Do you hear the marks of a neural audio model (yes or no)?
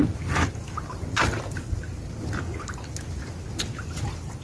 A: no